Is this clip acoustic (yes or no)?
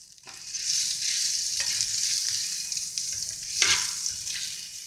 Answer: no